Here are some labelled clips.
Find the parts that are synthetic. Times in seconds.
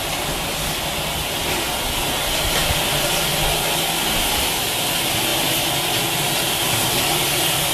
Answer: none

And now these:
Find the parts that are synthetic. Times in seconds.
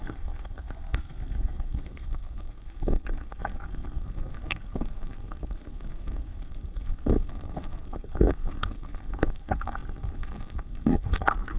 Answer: 0.0-11.6 (codec, SNAC)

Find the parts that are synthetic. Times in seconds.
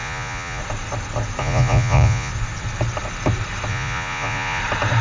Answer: 0.0-0.6 (vocoder, Vocos); 1.4-2.3; 3.7-4.6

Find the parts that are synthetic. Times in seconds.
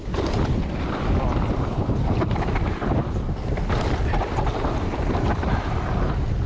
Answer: 0.0-3.0 (vocoder, BigVGAN v2); 4.9-6.5